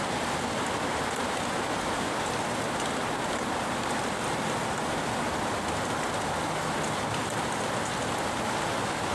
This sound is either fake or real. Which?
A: real